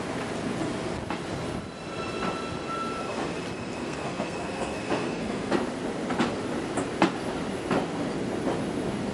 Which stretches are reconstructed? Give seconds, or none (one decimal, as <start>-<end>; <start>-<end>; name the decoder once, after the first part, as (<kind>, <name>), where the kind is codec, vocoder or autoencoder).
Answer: 3.8-5.5 (codec, SNAC)